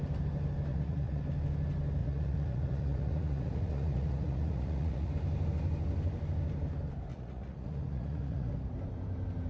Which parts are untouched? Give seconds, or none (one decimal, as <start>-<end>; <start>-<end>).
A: 0.0-0.7; 1.2-2.0; 5.1-7.1; 8.5-9.5